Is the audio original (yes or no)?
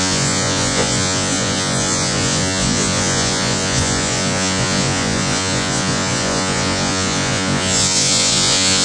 no